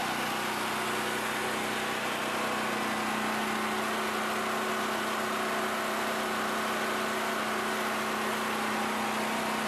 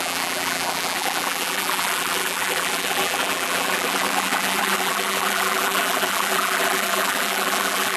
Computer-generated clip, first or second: second